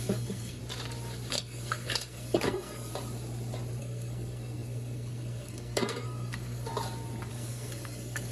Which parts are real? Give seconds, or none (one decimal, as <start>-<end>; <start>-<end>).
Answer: 0.6-1.3; 2.9-3.8; 6.7-7.3